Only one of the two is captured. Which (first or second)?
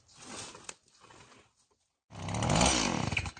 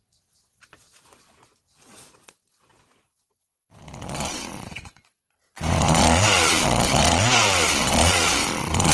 first